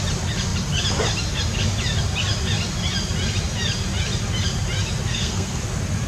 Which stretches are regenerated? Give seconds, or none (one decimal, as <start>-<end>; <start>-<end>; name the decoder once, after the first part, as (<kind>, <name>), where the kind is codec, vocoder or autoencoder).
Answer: 5.1-5.6 (codec, SNAC)